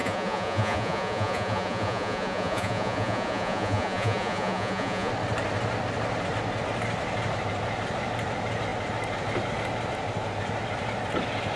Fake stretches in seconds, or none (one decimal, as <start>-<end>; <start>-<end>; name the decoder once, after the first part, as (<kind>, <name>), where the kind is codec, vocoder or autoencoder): 0.0-5.1 (vocoder, Vocos)